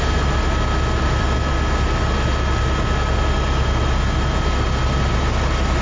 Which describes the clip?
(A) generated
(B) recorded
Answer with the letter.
B